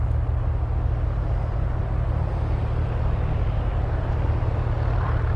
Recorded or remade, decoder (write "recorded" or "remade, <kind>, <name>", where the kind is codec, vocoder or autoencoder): recorded